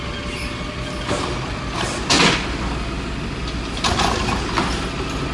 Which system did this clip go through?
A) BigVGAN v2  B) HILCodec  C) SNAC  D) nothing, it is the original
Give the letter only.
D